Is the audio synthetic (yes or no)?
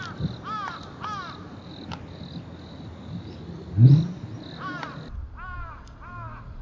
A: no